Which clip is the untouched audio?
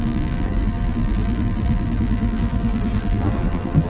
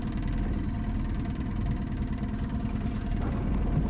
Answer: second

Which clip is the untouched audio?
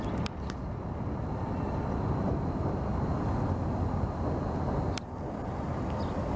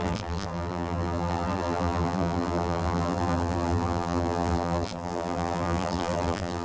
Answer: first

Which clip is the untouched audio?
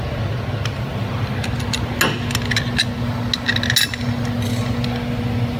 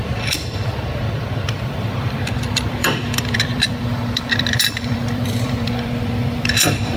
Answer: first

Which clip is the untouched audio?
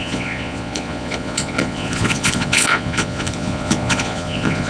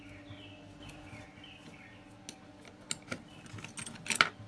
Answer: second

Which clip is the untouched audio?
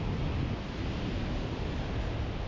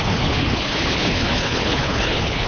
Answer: first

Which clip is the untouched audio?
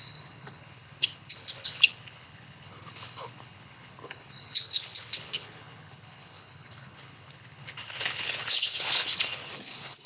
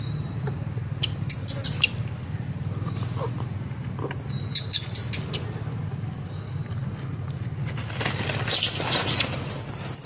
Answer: second